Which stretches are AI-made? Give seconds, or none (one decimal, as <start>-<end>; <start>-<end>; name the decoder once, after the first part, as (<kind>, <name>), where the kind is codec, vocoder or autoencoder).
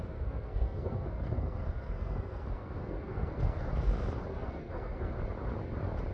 0.0-3.7 (codec, SNAC); 4.3-5.1